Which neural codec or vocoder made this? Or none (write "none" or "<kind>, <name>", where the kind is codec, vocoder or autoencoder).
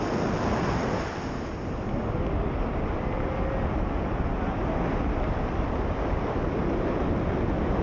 none